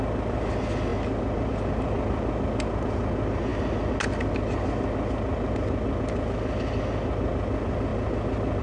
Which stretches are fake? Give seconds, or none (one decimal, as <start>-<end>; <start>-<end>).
none